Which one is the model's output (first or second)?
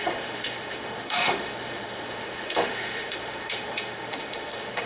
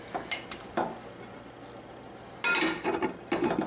first